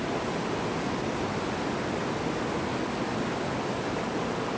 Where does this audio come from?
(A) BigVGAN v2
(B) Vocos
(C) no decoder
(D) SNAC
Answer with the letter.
C